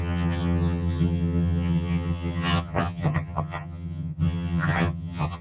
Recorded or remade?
remade